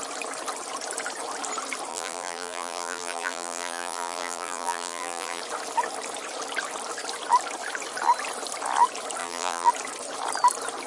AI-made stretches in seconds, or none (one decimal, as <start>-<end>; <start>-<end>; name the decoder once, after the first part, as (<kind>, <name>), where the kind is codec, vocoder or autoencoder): 1.9-5.4 (vocoder, BigVGAN v2); 9.2-9.7